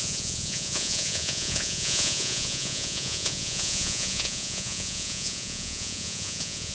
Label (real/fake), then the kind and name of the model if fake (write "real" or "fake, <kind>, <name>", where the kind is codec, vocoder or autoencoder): fake, vocoder, Vocos